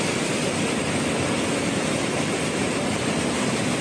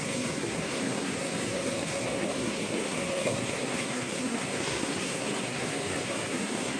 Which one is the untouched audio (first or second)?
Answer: first